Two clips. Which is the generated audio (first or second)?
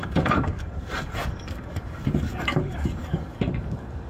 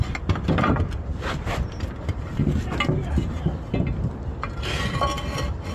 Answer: first